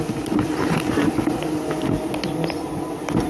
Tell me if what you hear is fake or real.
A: real